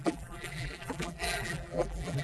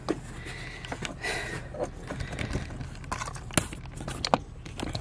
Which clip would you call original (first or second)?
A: second